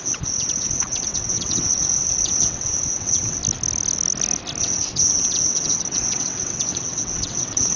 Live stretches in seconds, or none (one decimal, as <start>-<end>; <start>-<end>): 3.4-4.6